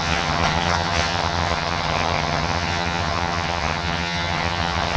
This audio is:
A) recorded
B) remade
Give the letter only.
B